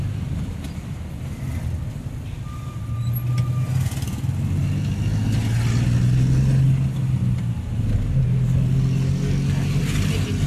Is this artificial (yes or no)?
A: no